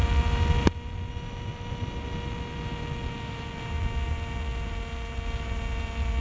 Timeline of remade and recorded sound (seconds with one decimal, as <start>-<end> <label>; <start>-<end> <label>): 0.0-6.2 recorded